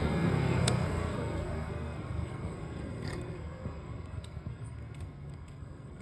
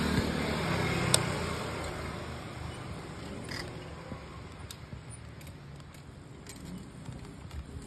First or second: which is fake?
first